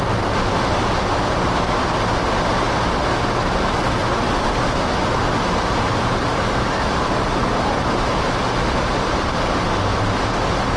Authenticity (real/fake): real